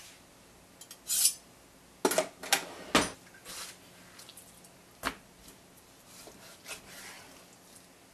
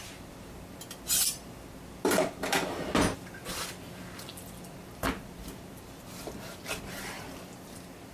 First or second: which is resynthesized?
second